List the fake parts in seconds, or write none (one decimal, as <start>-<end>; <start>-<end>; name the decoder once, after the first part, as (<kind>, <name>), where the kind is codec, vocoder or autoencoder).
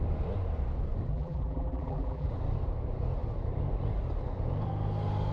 1.1-2.3 (vocoder, BigVGAN v2)